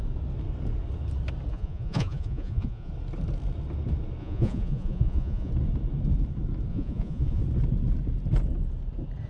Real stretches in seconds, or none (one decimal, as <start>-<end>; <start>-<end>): 0.0-1.5; 2.9-4.2; 5.5-6.7; 7.4-9.3